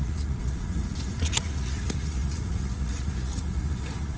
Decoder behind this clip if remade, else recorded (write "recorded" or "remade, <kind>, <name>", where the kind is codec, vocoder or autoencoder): remade, vocoder, Vocos